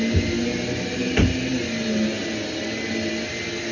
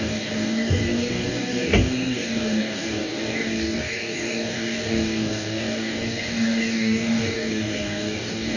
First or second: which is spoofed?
second